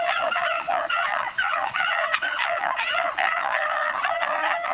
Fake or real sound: fake